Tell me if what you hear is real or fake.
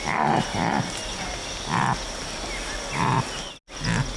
real